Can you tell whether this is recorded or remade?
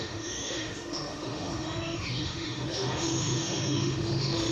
remade